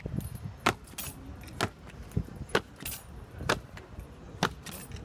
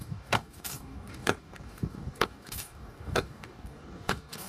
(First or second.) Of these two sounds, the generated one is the second